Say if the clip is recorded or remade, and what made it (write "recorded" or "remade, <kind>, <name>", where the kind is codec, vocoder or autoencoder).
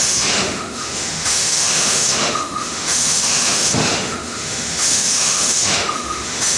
remade, autoencoder, DAC-VAE